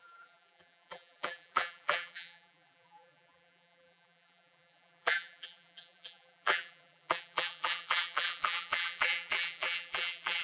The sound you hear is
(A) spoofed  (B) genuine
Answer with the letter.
A